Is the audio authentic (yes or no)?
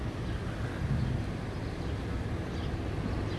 yes